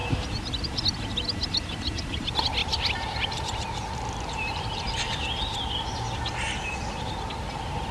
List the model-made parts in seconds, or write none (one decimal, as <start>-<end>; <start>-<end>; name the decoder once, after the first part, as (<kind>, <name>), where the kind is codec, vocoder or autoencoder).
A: 0.0-0.8 (vocoder, BigVGAN v2); 2.6-5.1